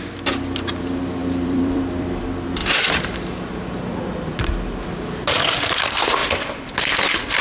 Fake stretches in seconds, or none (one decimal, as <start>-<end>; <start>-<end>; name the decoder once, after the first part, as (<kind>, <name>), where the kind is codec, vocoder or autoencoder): 1.2-2.2 (vocoder, BigVGAN v2); 6.2-6.8